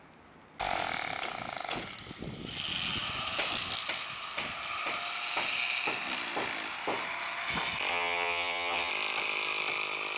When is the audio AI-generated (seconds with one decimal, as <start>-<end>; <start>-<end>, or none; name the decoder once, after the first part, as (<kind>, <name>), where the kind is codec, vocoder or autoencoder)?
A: 7.9-8.9 (vocoder, HiFi-GAN)